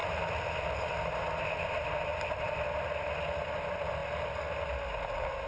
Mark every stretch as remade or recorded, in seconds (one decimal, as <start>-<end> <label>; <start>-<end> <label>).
0.0-5.5 recorded